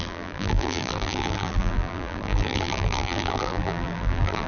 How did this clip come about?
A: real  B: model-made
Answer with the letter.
B